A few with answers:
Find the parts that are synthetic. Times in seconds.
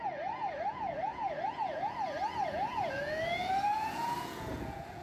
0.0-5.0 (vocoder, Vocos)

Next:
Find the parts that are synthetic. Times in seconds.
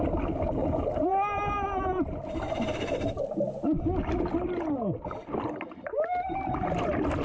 0.6-3.8 (vocoder, BigVGAN v2)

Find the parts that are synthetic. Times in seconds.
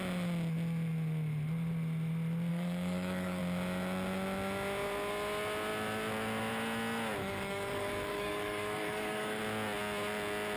2.5-3.4 (codec, DAC); 7.2-9.4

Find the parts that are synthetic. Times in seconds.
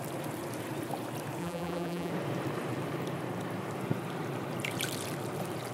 1.4-2.1 (vocoder, BigVGAN v2)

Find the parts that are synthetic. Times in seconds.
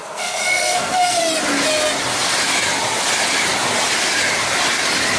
0.0-1.2 (codec, SNAC)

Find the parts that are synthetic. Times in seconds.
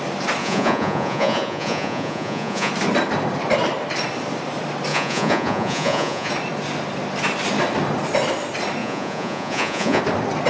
0.4-2.7 (vocoder, Vocos); 4.9-6.3; 8.8-10.0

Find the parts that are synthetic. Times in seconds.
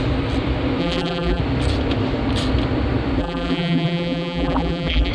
0.8-1.4 (vocoder, BigVGAN v2); 3.2-5.1